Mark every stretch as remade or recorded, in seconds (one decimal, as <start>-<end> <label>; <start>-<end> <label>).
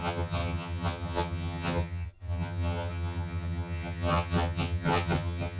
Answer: 0.0-5.6 remade